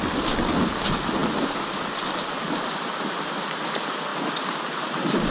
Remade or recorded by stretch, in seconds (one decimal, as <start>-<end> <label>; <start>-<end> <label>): 0.0-5.3 recorded